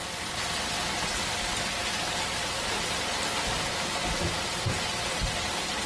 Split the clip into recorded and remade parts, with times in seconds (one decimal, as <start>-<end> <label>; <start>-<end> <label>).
0.0-5.9 recorded